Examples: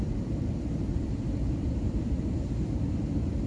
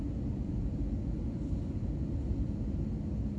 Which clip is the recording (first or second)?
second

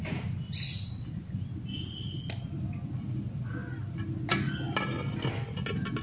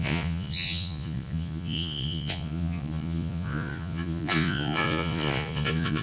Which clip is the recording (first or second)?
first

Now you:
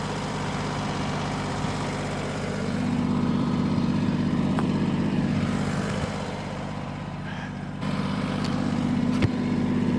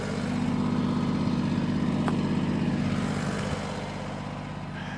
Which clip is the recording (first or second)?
second